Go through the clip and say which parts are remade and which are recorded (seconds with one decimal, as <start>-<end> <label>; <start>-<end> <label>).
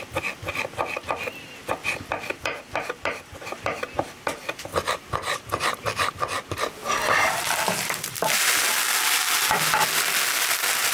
0.0-1.8 recorded; 1.8-3.8 remade; 3.8-4.7 recorded; 4.7-6.1 remade; 6.1-6.8 recorded; 6.8-8.0 remade; 8.0-10.9 recorded